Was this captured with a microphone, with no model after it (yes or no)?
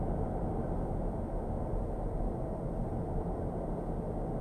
yes